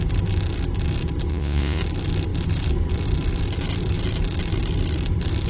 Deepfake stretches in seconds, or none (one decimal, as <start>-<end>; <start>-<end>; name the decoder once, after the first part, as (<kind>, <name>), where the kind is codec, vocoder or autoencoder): 1.3-1.8 (vocoder, Vocos)